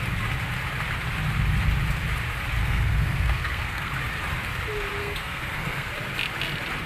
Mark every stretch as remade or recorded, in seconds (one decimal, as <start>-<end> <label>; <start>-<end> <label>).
0.0-2.6 recorded; 2.6-3.9 remade; 3.9-5.0 recorded; 5.0-5.9 remade; 5.9-6.9 recorded